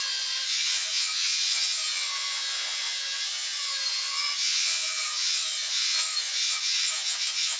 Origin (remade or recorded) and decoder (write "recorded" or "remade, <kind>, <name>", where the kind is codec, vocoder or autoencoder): remade, vocoder, Vocos